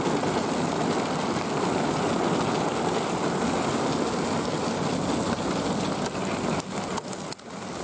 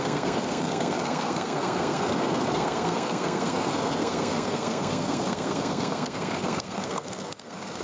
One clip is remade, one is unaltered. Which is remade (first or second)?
second